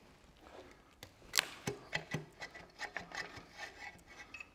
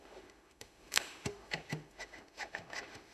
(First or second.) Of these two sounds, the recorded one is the first